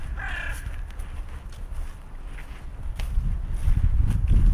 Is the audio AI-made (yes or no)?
no